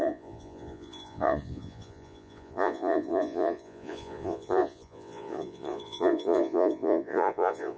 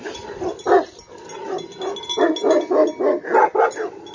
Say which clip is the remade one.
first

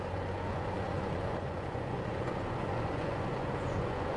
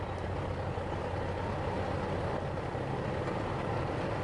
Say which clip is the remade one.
first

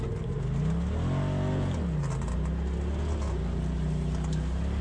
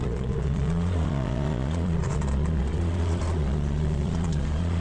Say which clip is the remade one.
second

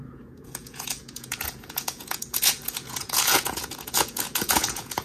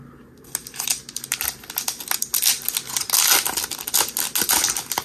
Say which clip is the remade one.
first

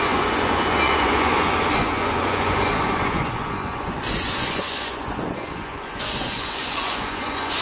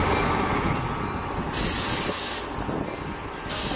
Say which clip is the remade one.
first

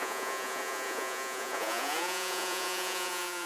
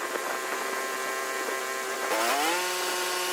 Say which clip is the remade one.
first